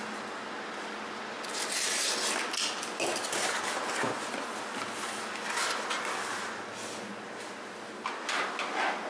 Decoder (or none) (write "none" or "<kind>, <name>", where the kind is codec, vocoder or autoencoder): none